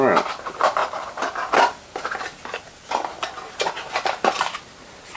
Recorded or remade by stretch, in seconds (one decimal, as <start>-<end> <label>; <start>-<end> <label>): 0.0-5.2 recorded